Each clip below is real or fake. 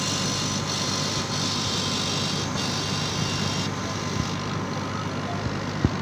real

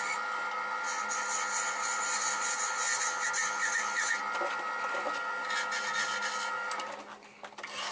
real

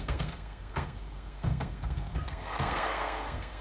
fake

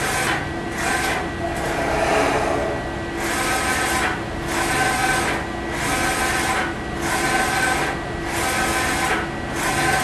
real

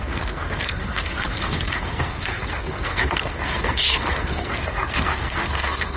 fake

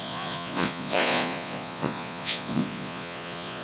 fake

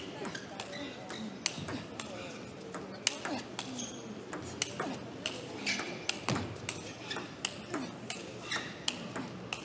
real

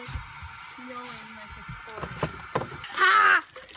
real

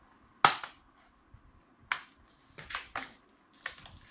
real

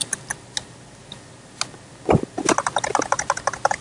real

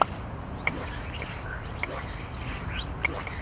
real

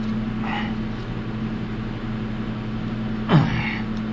real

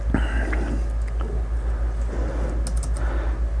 real